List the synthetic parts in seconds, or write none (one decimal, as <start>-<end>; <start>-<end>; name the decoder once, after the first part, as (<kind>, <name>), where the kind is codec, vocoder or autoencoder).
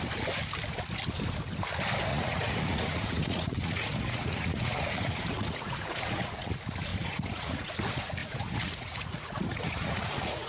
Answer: 2.1-6.5 (vocoder, Vocos); 6.9-7.7; 8.2-10.5